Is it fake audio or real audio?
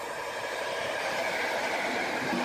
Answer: fake